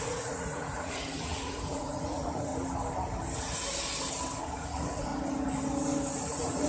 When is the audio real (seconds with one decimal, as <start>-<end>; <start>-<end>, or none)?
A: 2.5-4.4; 5.1-6.2